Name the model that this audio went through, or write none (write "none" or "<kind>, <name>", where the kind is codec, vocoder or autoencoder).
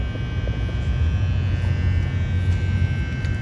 none